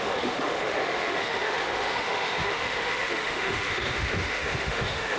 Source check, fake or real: fake